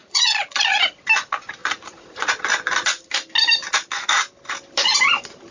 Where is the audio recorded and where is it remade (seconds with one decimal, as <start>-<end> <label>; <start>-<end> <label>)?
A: 0.0-0.8 remade; 0.8-1.6 recorded; 1.6-2.3 remade; 2.3-5.5 recorded